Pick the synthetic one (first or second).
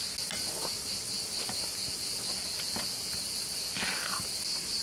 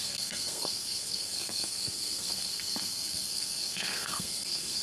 second